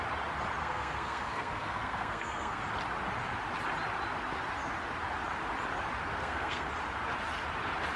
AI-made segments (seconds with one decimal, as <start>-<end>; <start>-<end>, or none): 0.6-2.6; 6.2-6.7